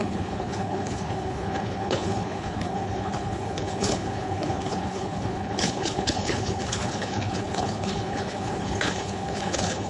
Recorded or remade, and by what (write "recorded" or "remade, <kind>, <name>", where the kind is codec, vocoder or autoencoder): remade, codec, HILCodec